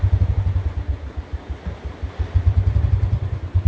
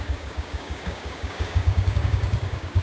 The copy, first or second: second